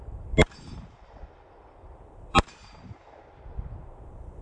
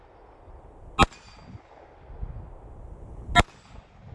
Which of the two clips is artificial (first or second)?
first